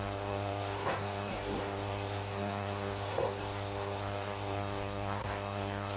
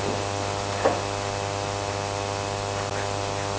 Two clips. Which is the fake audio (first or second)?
first